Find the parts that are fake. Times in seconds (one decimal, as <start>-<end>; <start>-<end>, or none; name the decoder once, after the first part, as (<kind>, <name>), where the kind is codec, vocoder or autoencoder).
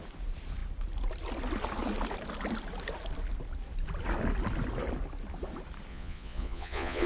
5.9-7.1 (vocoder, Vocos)